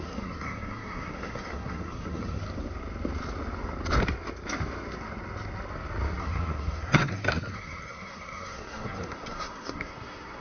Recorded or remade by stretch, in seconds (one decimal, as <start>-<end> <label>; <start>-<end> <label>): 0.0-2.4 remade; 2.4-6.2 recorded; 6.2-10.4 remade